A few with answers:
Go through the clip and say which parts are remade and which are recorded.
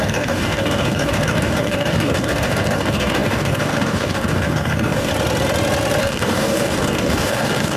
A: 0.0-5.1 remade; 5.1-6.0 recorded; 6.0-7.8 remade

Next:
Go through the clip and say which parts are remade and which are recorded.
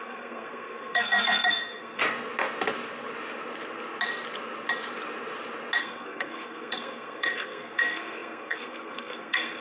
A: 0.0-2.0 remade; 2.0-5.8 recorded; 5.8-9.6 remade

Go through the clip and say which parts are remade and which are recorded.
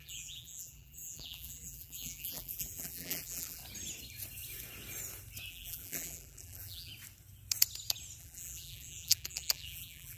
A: 0.0-3.6 remade; 3.6-5.5 recorded; 5.5-6.9 remade; 6.9-8.2 recorded; 8.2-10.2 remade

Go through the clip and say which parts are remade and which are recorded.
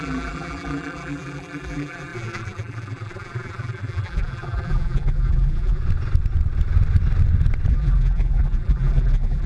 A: 0.0-5.8 remade; 5.8-7.7 recorded; 7.7-9.5 remade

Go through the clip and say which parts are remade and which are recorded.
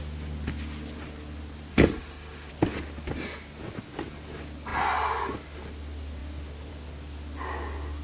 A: 0.0-1.7 recorded; 1.7-2.5 remade; 2.5-8.0 recorded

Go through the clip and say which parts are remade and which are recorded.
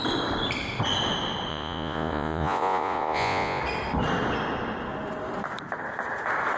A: 0.0-1.5 recorded; 1.5-3.6 remade; 3.6-6.6 recorded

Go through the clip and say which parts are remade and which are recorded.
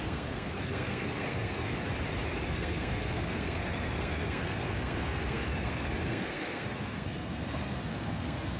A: 0.0-1.7 remade; 1.7-2.4 recorded; 2.4-8.6 remade